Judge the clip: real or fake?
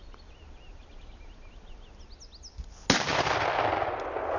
real